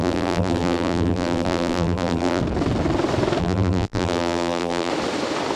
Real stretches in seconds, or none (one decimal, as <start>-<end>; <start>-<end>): 2.4-3.4; 4.9-5.6